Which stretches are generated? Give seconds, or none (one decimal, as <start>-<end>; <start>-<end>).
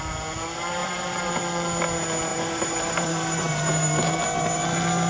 0.8-1.3; 2.3-4.2